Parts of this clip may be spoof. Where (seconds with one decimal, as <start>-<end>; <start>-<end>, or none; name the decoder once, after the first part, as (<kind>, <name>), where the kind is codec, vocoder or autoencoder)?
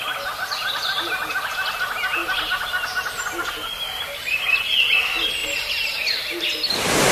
none